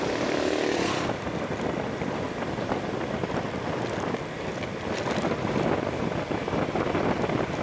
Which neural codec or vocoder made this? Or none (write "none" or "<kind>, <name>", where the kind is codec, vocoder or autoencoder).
none